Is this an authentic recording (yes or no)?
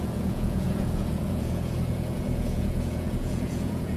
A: no